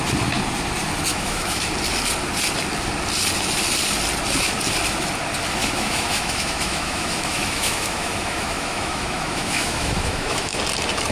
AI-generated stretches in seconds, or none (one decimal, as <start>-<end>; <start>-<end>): 1.1-1.6; 5.6-10.6